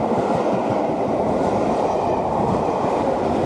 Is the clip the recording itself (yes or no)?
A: yes